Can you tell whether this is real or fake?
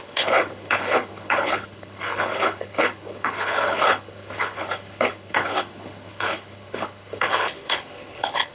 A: fake